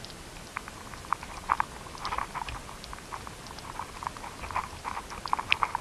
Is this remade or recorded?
recorded